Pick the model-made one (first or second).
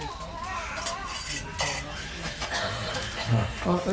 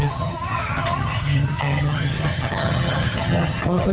second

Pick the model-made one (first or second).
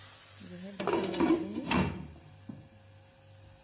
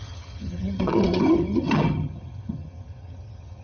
second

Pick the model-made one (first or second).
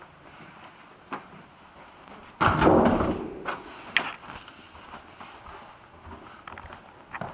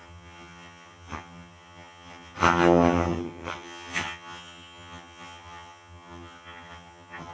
second